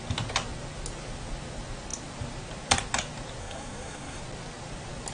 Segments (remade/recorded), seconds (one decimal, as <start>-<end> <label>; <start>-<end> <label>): 0.0-3.4 recorded; 3.4-4.2 remade; 4.2-5.1 recorded